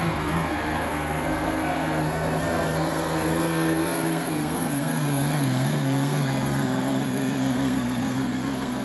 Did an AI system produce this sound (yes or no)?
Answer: yes